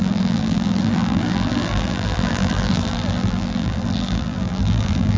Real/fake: fake